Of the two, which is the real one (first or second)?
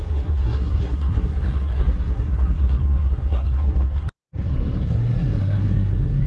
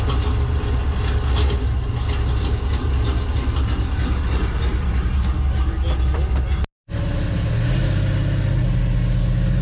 second